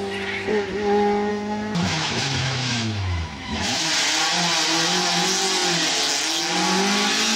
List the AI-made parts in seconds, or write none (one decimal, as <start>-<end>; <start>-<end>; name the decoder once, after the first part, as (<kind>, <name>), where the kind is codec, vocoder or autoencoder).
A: 1.3-3.9 (autoencoder, DAC-VAE)

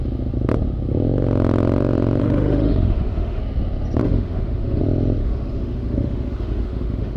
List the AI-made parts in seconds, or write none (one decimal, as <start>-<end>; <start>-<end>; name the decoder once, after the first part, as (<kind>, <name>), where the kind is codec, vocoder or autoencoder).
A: 2.2-3.4 (autoencoder, DAC-VAE); 4.0-4.8; 5.2-7.2

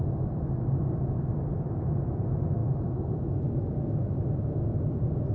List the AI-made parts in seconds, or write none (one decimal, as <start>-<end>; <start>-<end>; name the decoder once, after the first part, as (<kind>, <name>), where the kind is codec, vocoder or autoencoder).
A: 2.6-4.4 (autoencoder, DAC-VAE)